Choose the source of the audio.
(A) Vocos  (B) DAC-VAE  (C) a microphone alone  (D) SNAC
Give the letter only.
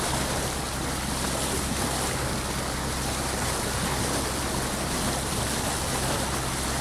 C